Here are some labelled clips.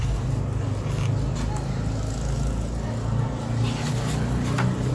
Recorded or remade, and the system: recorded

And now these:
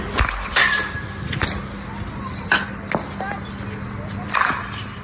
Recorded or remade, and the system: recorded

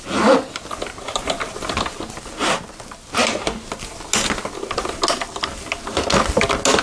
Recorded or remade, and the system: recorded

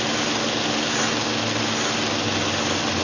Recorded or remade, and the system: recorded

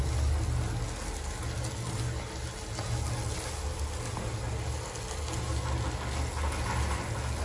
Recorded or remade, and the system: recorded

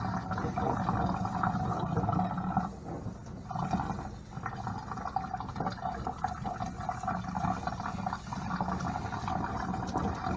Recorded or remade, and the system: recorded